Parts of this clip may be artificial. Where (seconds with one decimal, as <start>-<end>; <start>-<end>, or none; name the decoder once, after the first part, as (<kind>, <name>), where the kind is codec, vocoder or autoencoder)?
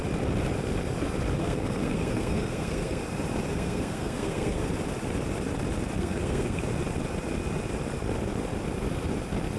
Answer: 1.4-3.0 (codec, SNAC); 3.5-4.7; 6.0-6.6